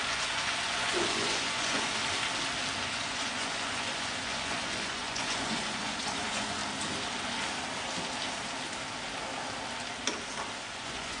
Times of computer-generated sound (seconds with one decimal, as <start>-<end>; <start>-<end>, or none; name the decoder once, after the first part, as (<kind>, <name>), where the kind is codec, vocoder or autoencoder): 0.0-2.0 (vocoder, Vocos); 2.8-6.6; 10.6-11.2